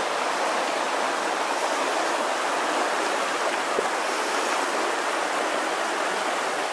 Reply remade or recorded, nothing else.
recorded